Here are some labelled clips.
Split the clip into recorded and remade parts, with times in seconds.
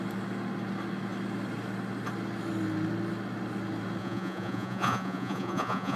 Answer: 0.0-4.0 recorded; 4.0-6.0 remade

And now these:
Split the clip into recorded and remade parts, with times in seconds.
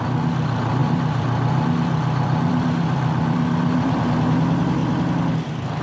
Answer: 0.0-0.8 recorded; 0.8-4.0 remade; 4.0-4.8 recorded; 4.8-5.8 remade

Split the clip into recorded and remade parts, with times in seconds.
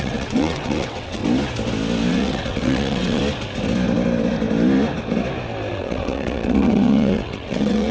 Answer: 0.0-1.2 remade; 1.2-2.1 recorded; 2.1-3.2 remade; 3.2-5.7 recorded; 5.7-7.9 remade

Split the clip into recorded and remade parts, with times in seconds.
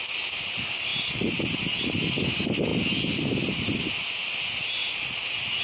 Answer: 0.0-5.6 recorded